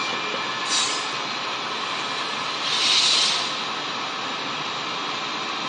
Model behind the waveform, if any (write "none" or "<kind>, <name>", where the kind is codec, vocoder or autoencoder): none